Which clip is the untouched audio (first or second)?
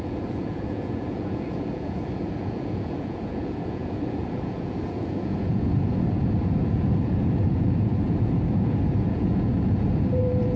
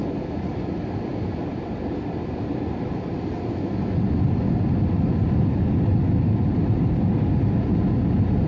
second